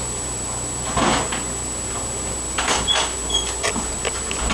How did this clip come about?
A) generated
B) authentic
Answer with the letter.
B